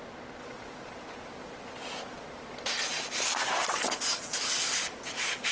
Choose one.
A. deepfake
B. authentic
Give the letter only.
B